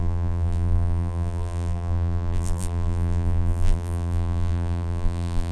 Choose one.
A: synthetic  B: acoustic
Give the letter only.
A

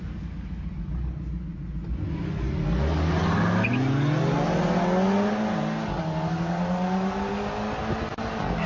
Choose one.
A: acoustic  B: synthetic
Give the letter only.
A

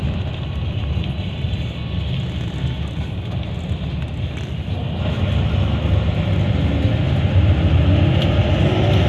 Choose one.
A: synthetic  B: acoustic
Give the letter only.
B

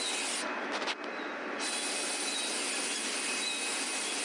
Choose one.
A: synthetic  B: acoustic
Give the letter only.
B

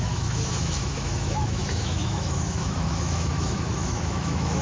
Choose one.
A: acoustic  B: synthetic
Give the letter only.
B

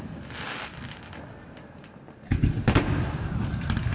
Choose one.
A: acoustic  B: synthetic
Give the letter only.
A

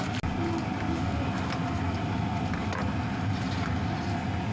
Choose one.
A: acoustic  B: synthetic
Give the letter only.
A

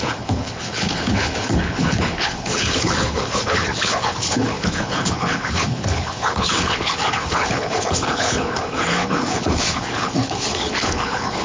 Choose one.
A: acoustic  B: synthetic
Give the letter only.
B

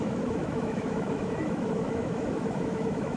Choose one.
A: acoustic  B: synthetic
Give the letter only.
B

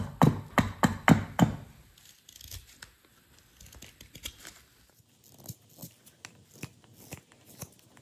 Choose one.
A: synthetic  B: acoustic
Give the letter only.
B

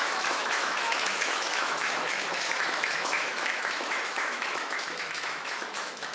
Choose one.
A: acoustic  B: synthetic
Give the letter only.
B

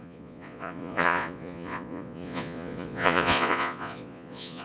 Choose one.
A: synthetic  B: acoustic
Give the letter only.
A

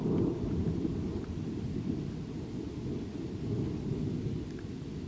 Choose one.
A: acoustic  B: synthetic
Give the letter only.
A